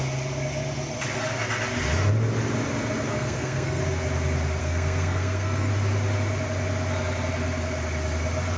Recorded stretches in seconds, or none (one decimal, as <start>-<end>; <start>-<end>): 0.0-3.1; 3.8-4.6; 5.7-8.6